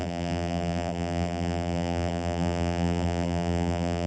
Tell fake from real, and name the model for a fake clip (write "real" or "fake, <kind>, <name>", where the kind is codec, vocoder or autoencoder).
fake, vocoder, BigVGAN v2